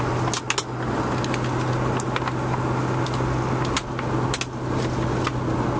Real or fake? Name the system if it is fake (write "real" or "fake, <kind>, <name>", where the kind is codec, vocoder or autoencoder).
real